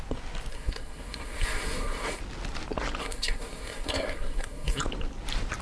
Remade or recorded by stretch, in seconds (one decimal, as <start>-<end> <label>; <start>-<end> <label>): 0.0-0.5 recorded; 0.5-2.2 remade; 2.2-3.0 recorded; 3.0-4.8 remade; 4.8-5.6 recorded